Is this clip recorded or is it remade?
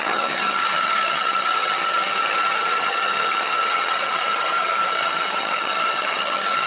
remade